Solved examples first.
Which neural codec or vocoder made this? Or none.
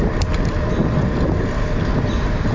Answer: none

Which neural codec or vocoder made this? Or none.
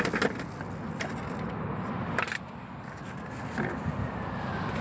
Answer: none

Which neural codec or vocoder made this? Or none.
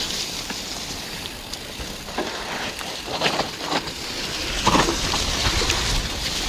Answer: vocoder, BigVGAN v2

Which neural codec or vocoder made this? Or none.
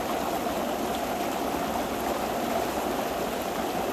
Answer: none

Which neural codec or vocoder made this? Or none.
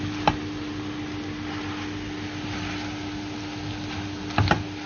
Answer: none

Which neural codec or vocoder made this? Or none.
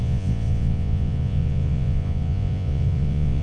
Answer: vocoder, Vocos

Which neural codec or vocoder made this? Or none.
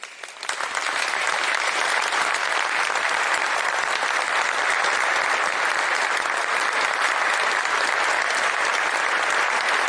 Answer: none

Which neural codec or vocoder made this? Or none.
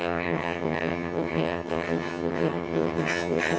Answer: vocoder, HiFi-GAN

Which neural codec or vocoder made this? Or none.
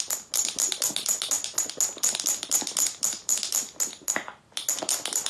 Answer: none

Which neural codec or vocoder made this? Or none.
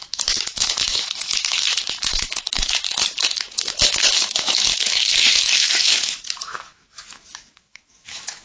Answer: autoencoder, DAC-VAE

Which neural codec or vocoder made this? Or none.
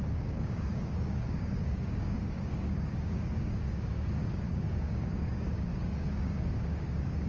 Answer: codec, DAC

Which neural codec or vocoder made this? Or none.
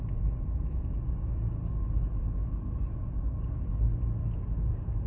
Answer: none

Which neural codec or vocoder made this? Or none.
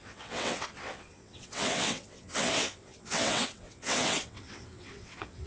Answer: vocoder, WaveNeXt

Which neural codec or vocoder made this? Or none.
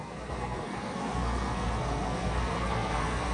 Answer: codec, SNAC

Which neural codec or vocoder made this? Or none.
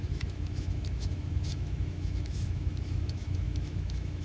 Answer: autoencoder, DAC-VAE